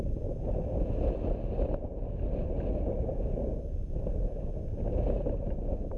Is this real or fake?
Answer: real